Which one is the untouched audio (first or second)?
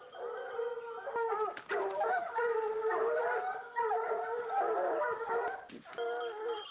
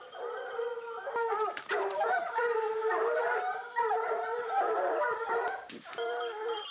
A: first